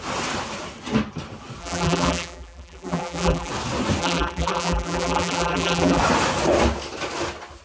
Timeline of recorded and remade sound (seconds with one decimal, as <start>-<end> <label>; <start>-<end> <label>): 0.0-1.6 recorded; 1.6-3.5 remade; 3.5-4.0 recorded; 4.0-6.0 remade; 6.0-7.6 recorded